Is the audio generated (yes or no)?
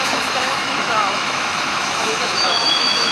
yes